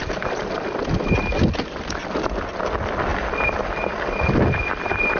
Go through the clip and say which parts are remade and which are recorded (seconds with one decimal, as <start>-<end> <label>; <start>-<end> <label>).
0.0-5.2 recorded